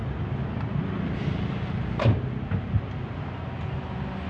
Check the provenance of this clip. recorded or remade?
recorded